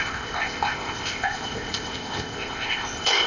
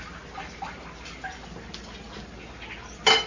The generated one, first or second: first